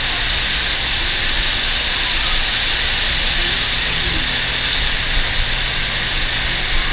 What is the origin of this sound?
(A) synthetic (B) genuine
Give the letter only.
B